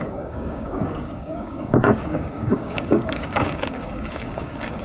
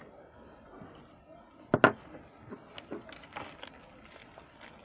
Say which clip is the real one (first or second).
second